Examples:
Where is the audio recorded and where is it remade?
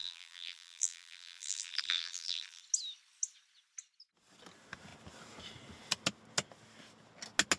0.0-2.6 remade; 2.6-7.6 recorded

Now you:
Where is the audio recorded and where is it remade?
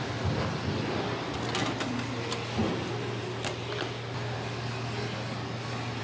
0.0-6.0 recorded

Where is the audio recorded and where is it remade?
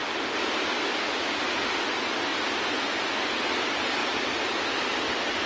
0.0-0.7 remade; 0.7-4.0 recorded; 4.0-4.7 remade; 4.7-5.5 recorded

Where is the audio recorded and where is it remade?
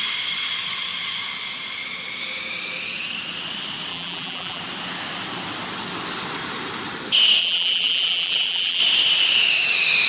0.0-3.9 recorded; 3.9-4.6 remade; 4.6-7.4 recorded; 7.4-8.8 remade; 8.8-10.1 recorded